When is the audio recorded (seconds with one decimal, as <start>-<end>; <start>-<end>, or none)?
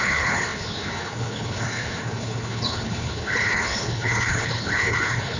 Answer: none